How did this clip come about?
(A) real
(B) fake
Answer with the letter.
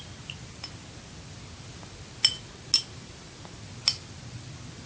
A